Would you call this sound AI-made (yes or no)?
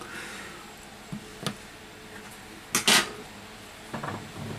no